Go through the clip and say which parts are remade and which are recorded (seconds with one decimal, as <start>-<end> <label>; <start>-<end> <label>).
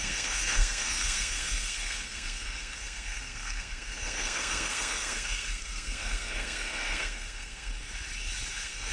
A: 0.0-7.7 remade; 7.7-8.5 recorded; 8.5-8.9 remade